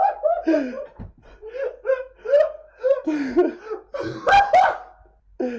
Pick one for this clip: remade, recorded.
recorded